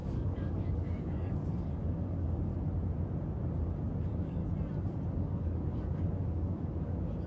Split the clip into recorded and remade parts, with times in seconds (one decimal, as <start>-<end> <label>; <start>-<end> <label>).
0.0-2.5 remade; 2.5-4.0 recorded; 4.0-4.4 remade; 4.4-5.2 recorded; 5.2-7.3 remade